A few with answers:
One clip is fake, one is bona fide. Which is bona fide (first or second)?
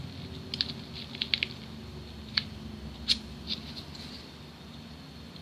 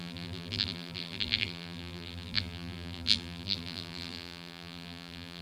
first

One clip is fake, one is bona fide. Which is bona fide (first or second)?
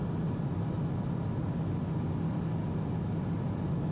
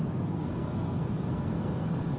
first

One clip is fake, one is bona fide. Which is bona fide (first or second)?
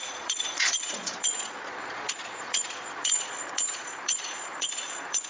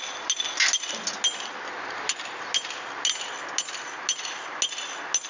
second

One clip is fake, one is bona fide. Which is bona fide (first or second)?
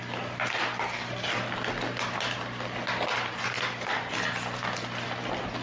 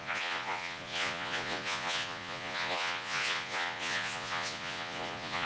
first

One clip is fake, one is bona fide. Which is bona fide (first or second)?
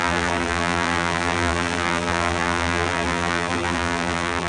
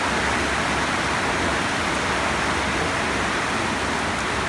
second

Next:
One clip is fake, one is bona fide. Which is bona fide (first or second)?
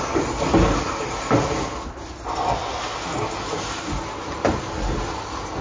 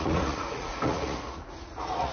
first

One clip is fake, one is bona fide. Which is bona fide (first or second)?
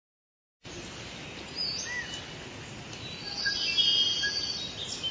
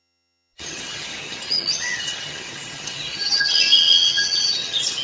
first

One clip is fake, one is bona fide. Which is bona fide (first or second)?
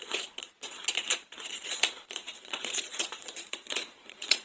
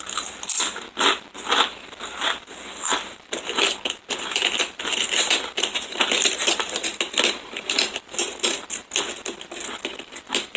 second